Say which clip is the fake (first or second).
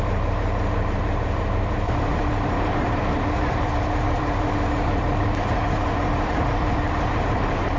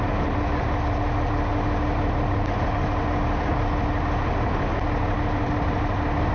first